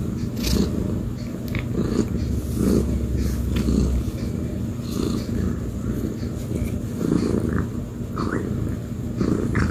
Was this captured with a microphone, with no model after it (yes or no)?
yes